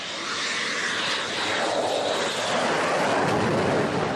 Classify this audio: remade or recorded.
recorded